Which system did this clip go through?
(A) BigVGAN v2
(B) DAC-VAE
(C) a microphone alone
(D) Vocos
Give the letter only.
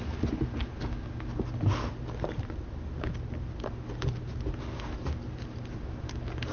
C